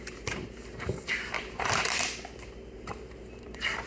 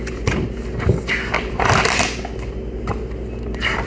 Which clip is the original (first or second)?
second